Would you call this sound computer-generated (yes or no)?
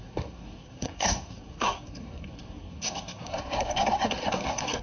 yes